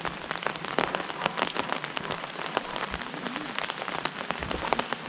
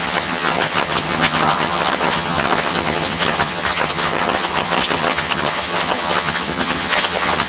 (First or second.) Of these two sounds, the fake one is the second